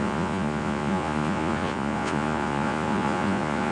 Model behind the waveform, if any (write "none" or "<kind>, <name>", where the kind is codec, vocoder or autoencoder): vocoder, Vocos